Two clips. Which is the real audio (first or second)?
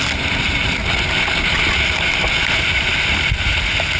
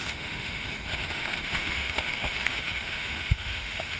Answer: first